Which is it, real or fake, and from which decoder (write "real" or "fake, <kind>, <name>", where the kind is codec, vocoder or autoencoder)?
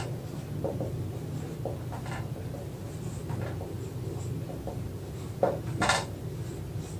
real